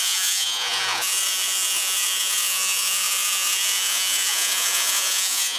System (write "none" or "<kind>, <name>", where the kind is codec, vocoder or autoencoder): vocoder, Vocos